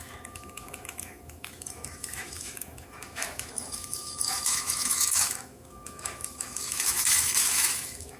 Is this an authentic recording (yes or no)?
no